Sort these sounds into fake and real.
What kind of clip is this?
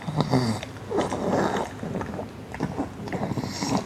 real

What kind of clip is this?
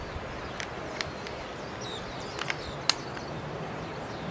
real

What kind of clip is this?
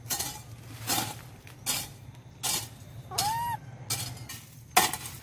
real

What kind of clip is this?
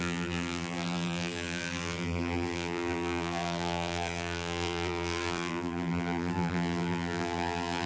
fake